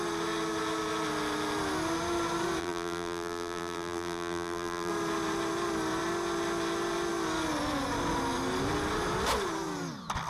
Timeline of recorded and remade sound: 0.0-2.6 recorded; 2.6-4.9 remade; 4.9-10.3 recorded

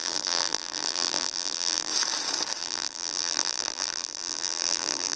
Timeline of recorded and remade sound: 0.0-1.9 remade; 1.9-2.6 recorded; 2.6-5.2 remade

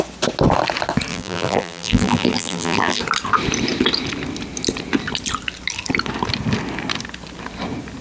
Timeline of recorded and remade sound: 0.0-1.1 recorded; 1.1-3.0 remade; 3.0-8.0 recorded

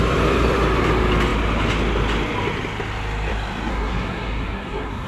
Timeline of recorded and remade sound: 0.0-3.7 recorded; 3.7-5.1 remade